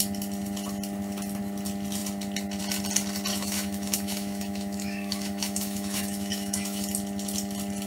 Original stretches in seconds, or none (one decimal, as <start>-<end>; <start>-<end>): 0.0-3.3; 6.8-7.9